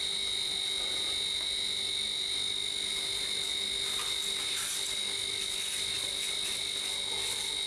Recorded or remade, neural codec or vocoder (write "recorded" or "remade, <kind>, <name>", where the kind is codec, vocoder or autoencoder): recorded